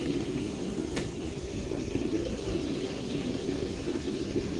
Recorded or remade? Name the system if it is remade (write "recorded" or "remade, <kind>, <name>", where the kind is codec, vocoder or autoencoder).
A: remade, codec, SNAC